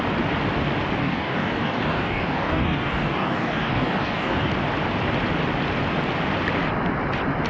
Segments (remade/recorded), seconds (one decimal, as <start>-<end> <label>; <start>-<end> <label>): 0.0-1.0 recorded; 1.0-4.5 remade; 4.5-7.5 recorded